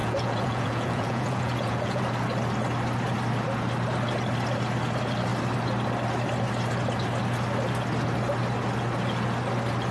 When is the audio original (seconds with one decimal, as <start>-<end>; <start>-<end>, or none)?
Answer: 2.0-9.9